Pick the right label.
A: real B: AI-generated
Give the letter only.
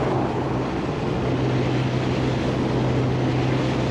A